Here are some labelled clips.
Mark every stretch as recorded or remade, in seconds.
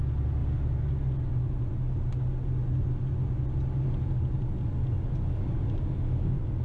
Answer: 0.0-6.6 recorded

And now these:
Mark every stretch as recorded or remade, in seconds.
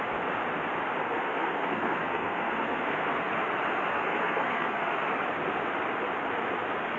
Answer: 0.0-1.0 recorded; 1.0-3.3 remade; 3.3-3.9 recorded; 3.9-4.9 remade; 4.9-7.0 recorded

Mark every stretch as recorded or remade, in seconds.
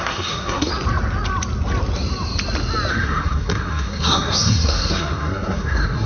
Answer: 0.0-0.7 remade; 0.7-2.9 recorded; 2.9-6.1 remade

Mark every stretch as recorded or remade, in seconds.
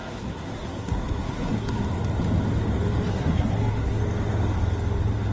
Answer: 0.0-1.8 remade; 1.8-3.1 recorded; 3.1-4.0 remade; 4.0-5.3 recorded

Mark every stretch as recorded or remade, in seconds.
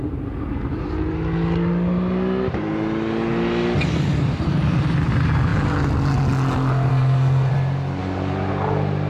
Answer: 0.0-6.9 recorded; 6.9-7.5 remade; 7.5-9.1 recorded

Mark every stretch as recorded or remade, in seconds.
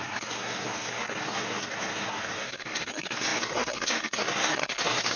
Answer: 0.0-5.2 remade